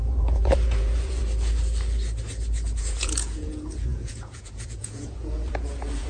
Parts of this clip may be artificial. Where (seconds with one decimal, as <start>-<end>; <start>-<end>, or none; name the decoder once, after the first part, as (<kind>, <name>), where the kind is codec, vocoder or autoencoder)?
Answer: 0.0-1.2 (vocoder, Vocos); 2.8-6.1